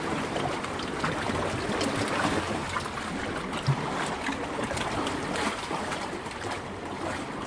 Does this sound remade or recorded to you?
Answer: recorded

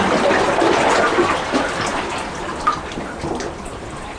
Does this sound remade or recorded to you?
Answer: recorded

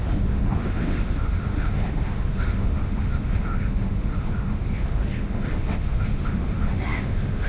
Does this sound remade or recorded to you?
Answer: remade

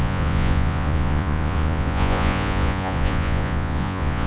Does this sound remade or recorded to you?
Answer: remade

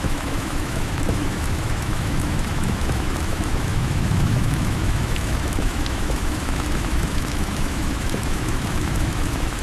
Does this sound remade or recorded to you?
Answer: remade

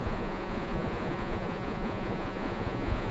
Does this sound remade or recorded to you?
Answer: remade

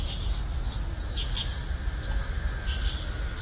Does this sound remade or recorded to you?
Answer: recorded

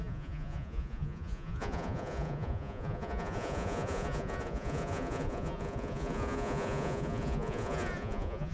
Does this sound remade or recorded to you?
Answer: remade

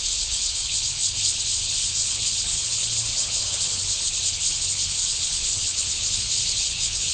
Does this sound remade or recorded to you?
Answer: remade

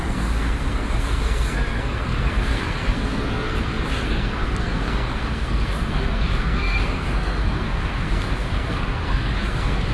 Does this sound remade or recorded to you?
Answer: remade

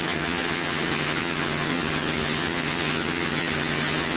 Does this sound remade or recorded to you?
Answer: remade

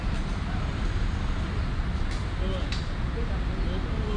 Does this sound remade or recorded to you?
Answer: recorded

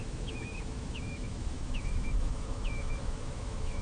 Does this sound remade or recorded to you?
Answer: remade